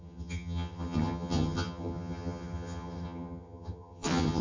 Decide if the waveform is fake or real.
fake